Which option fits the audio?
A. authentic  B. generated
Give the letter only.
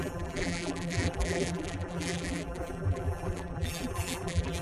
B